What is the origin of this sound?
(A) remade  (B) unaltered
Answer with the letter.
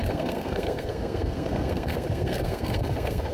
A